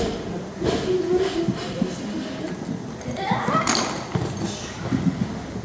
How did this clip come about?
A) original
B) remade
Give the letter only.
A